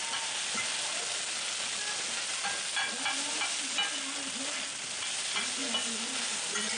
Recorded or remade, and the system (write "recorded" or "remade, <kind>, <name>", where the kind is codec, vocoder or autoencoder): recorded